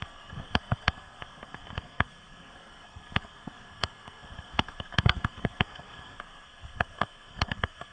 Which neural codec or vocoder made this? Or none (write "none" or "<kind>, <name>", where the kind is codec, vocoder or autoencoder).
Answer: codec, SNAC